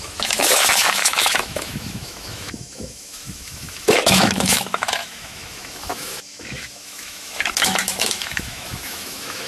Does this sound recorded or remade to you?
remade